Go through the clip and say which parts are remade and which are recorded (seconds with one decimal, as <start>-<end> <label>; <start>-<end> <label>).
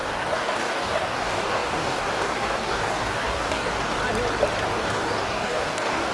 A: 0.0-4.0 remade; 4.0-4.7 recorded; 4.7-6.1 remade